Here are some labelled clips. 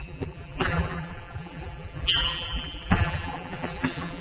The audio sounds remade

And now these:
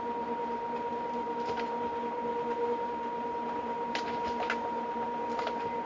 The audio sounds remade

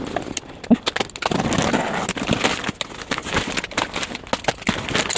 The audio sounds recorded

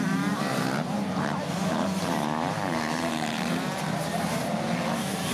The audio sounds remade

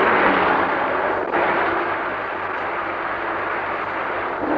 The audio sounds recorded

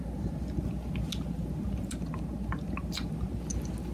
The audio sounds recorded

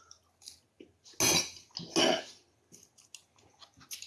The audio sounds recorded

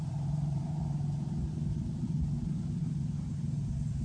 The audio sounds remade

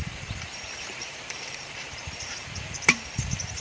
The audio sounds remade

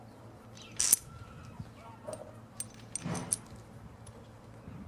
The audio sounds recorded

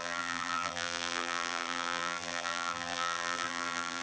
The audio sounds remade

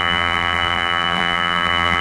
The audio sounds remade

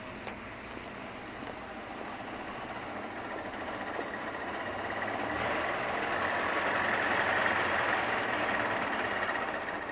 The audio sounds recorded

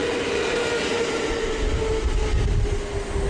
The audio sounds recorded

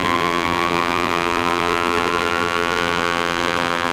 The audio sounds remade